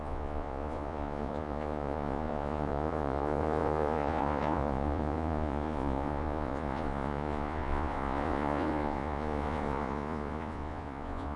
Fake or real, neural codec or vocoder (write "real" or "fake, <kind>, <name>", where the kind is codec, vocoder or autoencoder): fake, vocoder, Vocos